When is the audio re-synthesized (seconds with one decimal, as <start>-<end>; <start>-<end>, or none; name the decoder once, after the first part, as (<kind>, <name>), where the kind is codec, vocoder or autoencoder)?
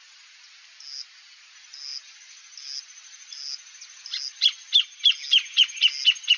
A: none